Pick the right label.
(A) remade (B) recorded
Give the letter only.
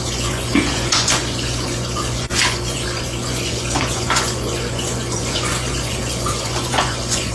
A